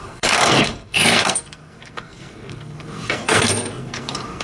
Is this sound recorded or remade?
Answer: remade